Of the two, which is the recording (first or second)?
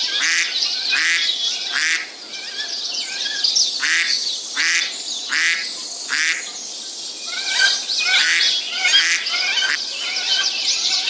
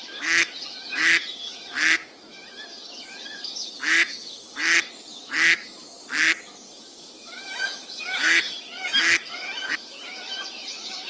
first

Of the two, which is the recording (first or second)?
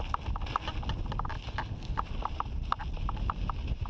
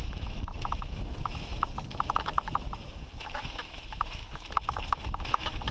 first